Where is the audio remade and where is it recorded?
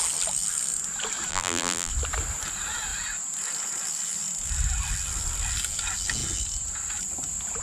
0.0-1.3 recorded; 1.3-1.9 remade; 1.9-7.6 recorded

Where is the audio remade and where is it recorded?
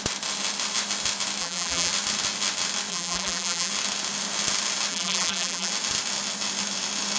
0.0-1.4 recorded; 1.4-1.9 remade; 1.9-2.9 recorded; 2.9-3.7 remade; 3.7-4.9 recorded; 4.9-5.7 remade; 5.7-7.2 recorded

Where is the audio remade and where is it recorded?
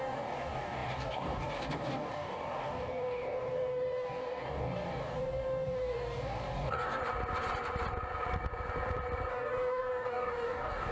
0.0-7.0 remade; 7.0-9.3 recorded; 9.3-10.9 remade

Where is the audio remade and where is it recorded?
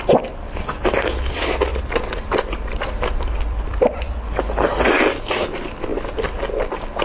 0.0-1.7 recorded; 1.7-4.4 remade; 4.4-7.0 recorded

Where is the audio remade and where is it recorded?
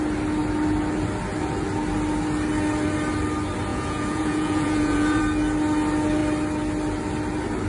0.0-3.7 recorded; 3.7-5.2 remade; 5.2-7.7 recorded